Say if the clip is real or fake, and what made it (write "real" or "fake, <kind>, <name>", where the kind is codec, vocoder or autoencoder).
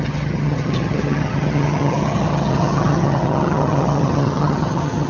fake, vocoder, HiFi-GAN